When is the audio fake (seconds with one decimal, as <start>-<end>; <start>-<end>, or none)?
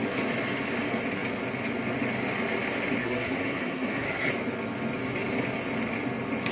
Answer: 3.0-4.3